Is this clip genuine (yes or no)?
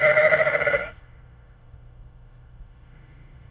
no